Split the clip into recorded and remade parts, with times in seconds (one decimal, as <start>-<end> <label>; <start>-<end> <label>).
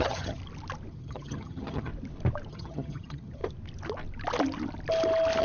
0.0-0.4 remade; 0.4-0.9 recorded; 0.9-1.9 remade; 1.9-2.5 recorded; 2.5-3.4 remade; 3.4-5.4 recorded